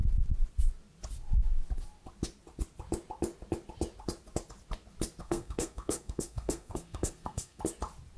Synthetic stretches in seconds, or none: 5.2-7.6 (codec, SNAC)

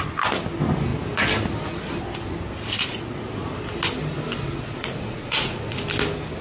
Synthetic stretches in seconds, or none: 4.8-5.8 (vocoder, Vocos)

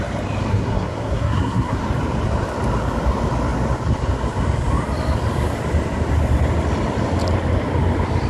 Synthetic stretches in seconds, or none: 0.5-1.8 (codec, SNAC)